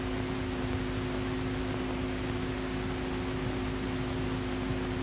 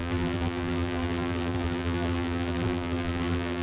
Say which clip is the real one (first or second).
first